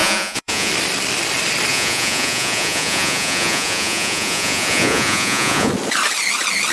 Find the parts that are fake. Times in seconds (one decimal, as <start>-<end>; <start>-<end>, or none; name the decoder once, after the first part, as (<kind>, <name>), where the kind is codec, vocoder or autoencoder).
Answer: 0.0-0.7 (vocoder, Vocos); 1.7-5.7